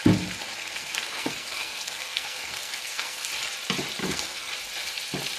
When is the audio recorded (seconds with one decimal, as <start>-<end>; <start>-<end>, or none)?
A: 0.0-0.6; 3.3-4.0; 4.5-5.4